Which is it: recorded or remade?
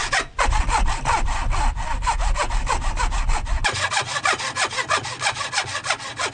recorded